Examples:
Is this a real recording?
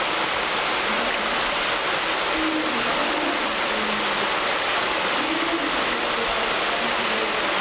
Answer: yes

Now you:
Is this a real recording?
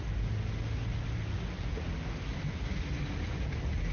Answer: yes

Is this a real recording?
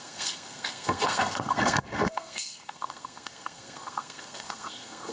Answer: no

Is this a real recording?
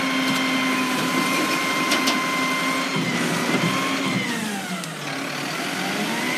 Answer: yes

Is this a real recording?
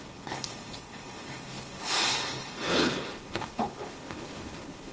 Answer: no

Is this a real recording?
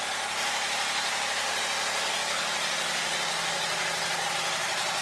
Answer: yes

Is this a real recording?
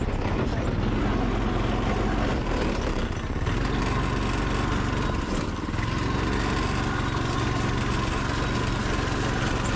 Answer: yes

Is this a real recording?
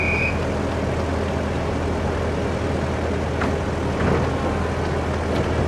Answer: yes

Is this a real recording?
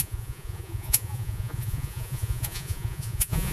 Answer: no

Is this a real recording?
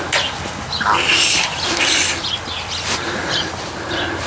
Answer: yes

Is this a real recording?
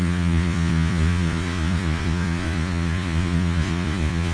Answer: no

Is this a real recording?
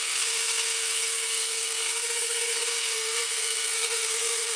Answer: no